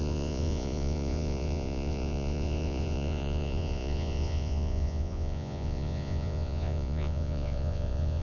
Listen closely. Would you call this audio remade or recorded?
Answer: remade